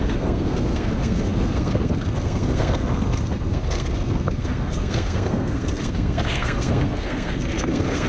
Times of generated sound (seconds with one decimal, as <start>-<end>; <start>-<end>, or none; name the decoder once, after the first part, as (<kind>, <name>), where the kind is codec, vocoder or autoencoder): 0.0-8.1 (codec, SNAC)